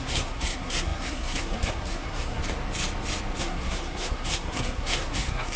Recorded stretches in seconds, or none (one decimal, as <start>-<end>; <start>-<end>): 2.4-3.4